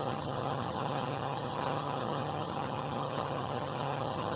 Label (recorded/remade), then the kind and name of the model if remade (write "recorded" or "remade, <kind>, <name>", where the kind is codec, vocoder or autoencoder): remade, vocoder, HiFi-GAN